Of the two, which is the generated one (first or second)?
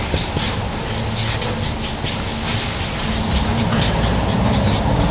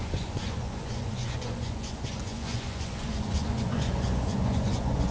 second